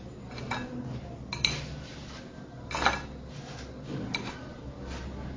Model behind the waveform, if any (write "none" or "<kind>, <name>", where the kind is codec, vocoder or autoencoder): none